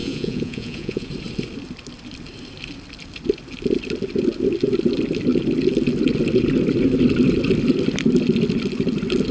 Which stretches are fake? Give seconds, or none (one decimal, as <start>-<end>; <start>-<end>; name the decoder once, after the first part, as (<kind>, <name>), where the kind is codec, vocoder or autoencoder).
0.0-1.1 (vocoder, Vocos)